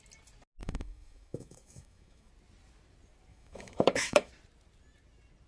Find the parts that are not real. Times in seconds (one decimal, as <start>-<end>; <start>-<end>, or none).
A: 0.6-2.3; 3.3-4.3